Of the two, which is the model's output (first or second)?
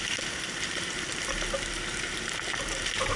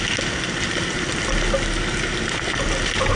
first